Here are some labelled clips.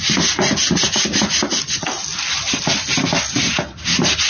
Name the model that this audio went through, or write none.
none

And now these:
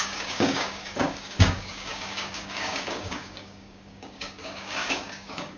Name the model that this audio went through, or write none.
codec, DAC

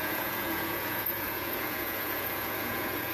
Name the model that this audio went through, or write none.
vocoder, Vocos